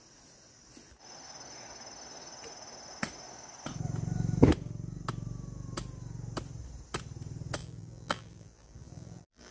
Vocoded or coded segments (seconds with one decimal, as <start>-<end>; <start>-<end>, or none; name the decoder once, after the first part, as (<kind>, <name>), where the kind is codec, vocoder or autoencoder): 7.6-9.5 (vocoder, BigVGAN v2)